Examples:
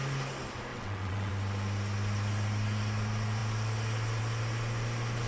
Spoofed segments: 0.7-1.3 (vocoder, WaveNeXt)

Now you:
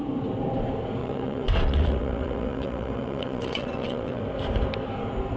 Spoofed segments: 1.0-4.2 (vocoder, WaveNeXt)

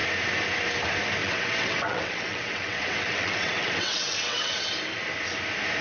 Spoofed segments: 1.2-4.7 (vocoder, WaveNeXt)